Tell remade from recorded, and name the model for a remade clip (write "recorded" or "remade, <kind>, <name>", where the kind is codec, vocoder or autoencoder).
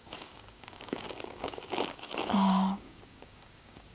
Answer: remade, codec, DAC